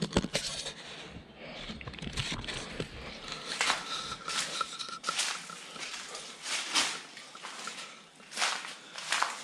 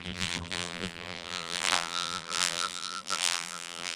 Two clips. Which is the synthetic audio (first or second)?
second